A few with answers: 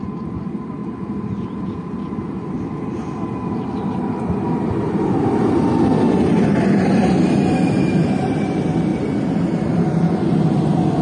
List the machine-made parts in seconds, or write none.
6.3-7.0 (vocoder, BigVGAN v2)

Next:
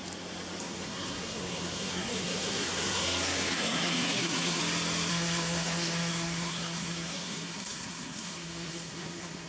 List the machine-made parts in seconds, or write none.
0.6-4.6 (codec, SNAC); 5.1-9.5

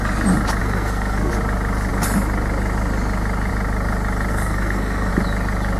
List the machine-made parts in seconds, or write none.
0.6-1.3 (codec, SNAC); 4.3-5.1